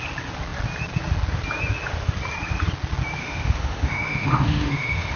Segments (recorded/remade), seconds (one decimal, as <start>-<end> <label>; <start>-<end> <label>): 0.0-3.2 recorded; 3.2-5.2 remade